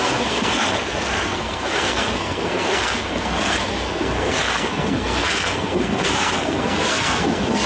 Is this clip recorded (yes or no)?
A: no